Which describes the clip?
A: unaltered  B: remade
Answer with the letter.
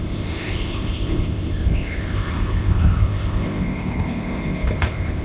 B